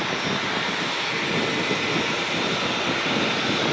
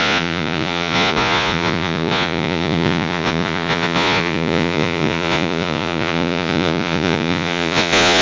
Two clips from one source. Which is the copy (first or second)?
second